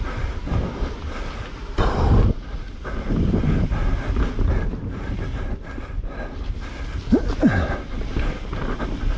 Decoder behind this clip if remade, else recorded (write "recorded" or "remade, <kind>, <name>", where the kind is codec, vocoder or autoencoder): recorded